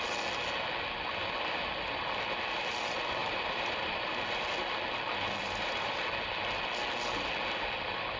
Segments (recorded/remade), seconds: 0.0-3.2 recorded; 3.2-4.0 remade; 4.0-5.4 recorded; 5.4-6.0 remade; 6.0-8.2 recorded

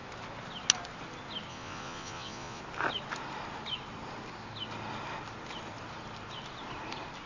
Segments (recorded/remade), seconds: 0.0-1.5 recorded; 1.5-2.6 remade; 2.6-7.3 recorded

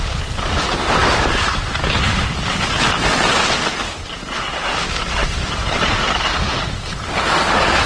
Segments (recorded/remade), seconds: 0.0-5.2 recorded; 5.2-5.8 remade; 5.8-7.9 recorded

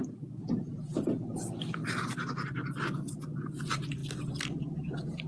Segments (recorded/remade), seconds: 0.0-5.3 recorded

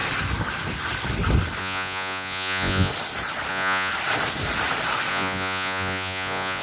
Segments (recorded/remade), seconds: 0.0-1.6 recorded; 1.6-2.9 remade; 2.9-3.5 recorded; 3.5-3.9 remade; 3.9-5.1 recorded; 5.1-6.6 remade

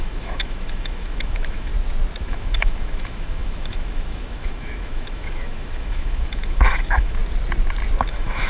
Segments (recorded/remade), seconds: 0.0-1.7 remade; 1.7-2.2 recorded; 2.2-7.2 remade; 7.2-8.0 recorded; 8.0-8.5 remade